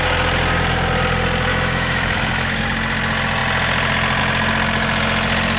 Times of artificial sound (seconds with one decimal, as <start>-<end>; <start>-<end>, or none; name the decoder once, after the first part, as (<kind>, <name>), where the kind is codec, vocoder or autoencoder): 1.5-2.6 (autoencoder, DAC-VAE)

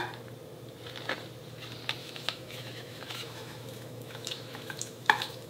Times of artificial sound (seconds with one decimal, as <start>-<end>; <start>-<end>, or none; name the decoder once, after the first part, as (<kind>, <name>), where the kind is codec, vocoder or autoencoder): 2.0-5.5 (autoencoder, DAC-VAE)